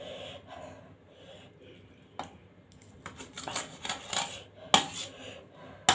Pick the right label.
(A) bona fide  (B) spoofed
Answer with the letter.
A